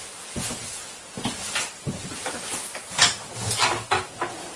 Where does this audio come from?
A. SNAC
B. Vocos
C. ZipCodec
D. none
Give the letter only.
D